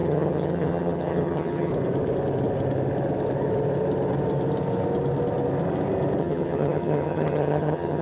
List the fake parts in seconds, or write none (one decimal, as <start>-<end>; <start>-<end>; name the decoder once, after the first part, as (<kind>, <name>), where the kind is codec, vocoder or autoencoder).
0.0-1.7 (vocoder, HiFi-GAN); 6.2-8.0